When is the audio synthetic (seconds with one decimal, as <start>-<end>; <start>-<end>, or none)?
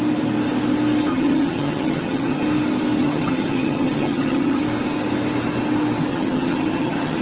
1.1-2.4; 3.0-4.6; 6.1-7.2